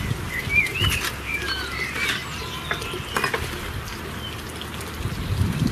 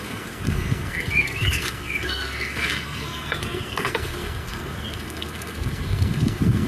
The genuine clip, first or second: first